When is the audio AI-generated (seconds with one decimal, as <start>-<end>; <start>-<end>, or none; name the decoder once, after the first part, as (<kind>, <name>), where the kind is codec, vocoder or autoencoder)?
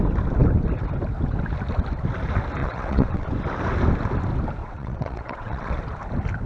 2.6-3.3 (vocoder, WaveNeXt); 4.6-5.8